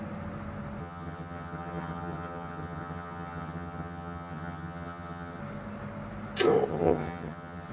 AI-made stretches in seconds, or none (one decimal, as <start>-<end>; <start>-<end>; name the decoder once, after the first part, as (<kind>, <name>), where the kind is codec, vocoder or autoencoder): 0.8-5.4 (vocoder, HiFi-GAN); 6.7-7.7